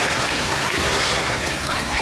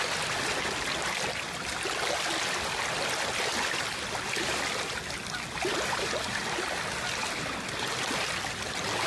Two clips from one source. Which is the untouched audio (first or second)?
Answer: second